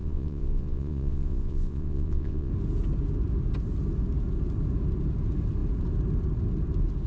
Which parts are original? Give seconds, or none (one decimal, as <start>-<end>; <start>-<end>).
2.5-7.1